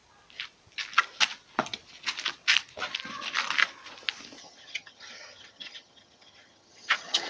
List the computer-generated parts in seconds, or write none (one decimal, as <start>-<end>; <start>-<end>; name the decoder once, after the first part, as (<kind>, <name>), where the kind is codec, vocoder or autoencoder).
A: 4.4-7.3 (vocoder, HiFi-GAN)